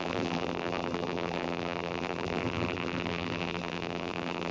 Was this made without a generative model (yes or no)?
no